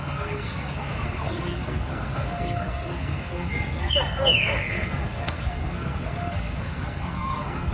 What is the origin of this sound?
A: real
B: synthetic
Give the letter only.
B